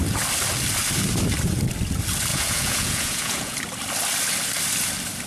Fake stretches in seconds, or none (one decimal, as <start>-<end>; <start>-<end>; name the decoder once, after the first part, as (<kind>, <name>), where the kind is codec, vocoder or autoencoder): 2.3-3.6 (vocoder, Vocos)